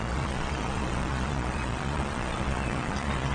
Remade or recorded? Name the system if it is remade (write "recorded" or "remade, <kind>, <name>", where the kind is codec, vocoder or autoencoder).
remade, vocoder, Vocos